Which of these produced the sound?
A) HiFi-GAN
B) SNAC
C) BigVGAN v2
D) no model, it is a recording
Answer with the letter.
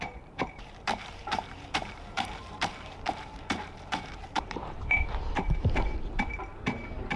C